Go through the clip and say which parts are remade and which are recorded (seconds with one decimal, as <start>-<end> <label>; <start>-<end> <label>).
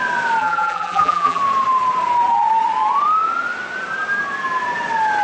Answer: 0.0-0.4 recorded; 0.4-1.4 remade; 1.4-5.2 recorded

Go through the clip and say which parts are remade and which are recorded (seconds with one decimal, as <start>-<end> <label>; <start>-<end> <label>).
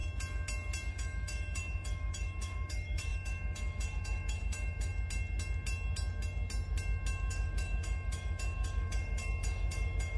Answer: 0.0-0.9 recorded; 0.9-4.9 remade; 4.9-7.3 recorded; 7.3-10.2 remade